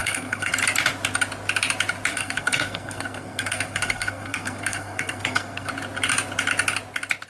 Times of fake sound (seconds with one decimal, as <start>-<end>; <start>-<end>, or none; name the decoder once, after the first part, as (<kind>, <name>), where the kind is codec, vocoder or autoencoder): 0.0-0.5 (codec, SNAC); 2.1-5.7